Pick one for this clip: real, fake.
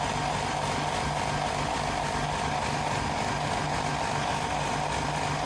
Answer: real